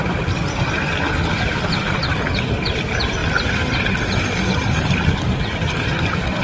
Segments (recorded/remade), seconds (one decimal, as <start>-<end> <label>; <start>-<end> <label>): 0.0-3.2 remade; 3.2-4.4 recorded; 4.4-6.4 remade